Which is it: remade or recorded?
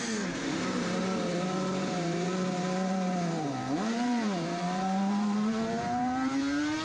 remade